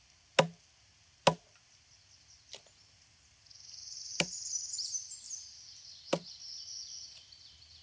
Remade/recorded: recorded